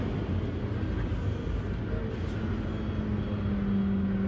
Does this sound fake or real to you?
real